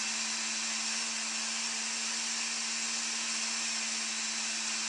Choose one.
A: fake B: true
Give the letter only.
B